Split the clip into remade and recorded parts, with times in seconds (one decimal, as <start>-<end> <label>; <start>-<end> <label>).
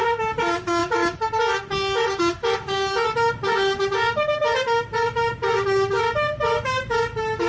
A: 0.0-7.5 recorded